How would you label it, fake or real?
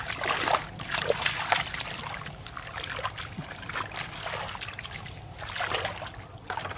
real